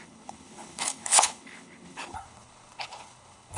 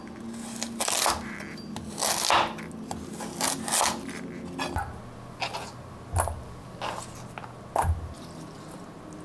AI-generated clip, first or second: first